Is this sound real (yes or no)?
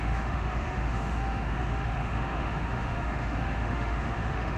no